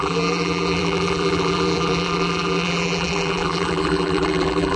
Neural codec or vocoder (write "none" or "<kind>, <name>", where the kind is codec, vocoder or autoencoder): vocoder, BigVGAN v2